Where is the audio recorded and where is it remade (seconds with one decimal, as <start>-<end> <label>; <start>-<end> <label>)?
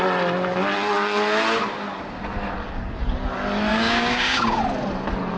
0.0-3.7 recorded; 3.7-4.6 remade; 4.6-5.4 recorded